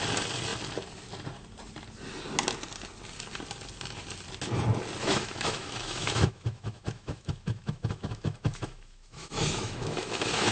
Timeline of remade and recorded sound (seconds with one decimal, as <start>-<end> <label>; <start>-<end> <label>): 0.0-5.0 recorded; 5.0-10.5 remade